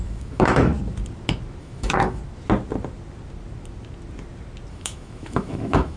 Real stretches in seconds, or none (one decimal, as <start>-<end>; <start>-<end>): 0.7-1.6; 2.2-4.7